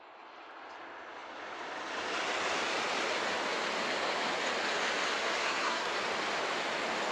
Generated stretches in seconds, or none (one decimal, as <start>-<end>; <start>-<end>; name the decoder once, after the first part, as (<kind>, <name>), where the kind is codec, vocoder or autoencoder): 5.2-5.9 (codec, SNAC)